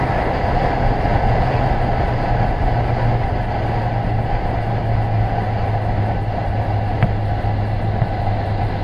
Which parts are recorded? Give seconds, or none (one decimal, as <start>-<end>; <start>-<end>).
0.0-1.1; 1.6-8.8